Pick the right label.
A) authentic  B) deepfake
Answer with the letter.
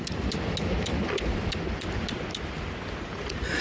A